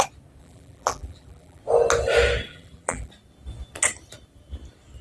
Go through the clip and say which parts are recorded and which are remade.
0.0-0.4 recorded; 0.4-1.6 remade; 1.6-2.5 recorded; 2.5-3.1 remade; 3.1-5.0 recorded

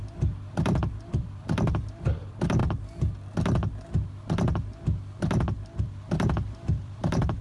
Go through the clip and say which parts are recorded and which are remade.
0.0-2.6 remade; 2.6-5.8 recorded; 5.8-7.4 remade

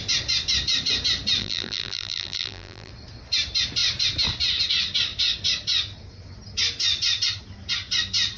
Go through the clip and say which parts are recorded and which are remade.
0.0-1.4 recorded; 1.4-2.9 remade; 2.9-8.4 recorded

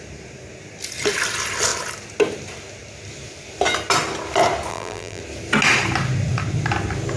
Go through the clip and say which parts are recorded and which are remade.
0.0-4.7 recorded; 4.7-5.2 remade; 5.2-7.2 recorded

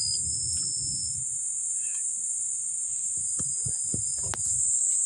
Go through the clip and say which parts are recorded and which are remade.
0.0-1.0 recorded; 1.0-1.7 remade; 1.7-2.2 recorded; 2.2-2.8 remade; 2.8-5.1 recorded